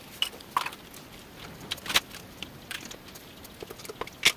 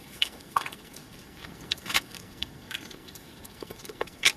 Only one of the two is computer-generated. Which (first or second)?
second